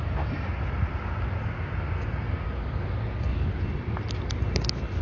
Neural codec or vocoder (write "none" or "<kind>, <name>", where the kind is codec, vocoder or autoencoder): none